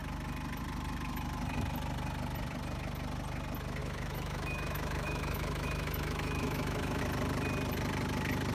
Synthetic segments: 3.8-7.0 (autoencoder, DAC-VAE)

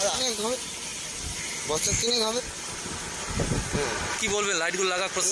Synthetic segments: none

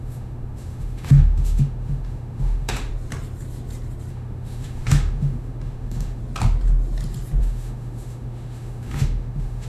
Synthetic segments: 0.0-2.9 (autoencoder, DAC-VAE); 4.1-6.2; 7.4-9.7

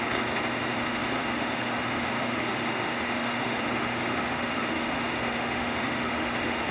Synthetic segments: 0.0-6.7 (autoencoder, DAC-VAE)

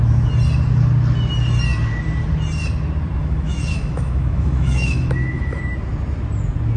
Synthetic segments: 3.2-5.6 (autoencoder, DAC-VAE)